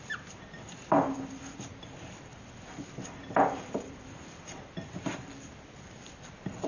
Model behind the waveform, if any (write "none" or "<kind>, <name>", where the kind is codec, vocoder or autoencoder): vocoder, BigVGAN v2